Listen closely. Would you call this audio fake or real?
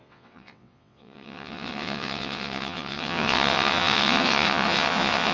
fake